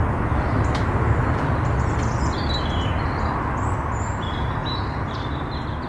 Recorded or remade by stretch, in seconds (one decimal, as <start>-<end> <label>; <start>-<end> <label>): 0.0-4.6 recorded; 4.6-5.5 remade; 5.5-5.9 recorded